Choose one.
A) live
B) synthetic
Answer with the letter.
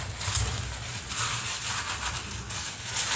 A